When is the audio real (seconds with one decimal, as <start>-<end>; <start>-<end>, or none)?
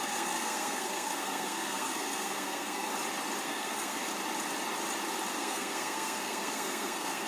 2.9-3.4; 4.1-5.3